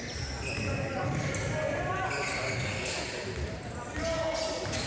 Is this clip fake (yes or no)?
no